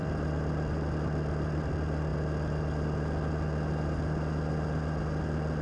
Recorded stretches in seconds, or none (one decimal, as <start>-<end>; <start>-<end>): 0.0-5.6